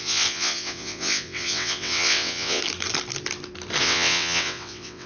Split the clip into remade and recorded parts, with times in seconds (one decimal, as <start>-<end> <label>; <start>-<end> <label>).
0.0-2.6 remade; 2.6-3.8 recorded; 3.8-5.1 remade